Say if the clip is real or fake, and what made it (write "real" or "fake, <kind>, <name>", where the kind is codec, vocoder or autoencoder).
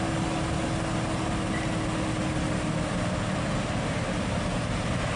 real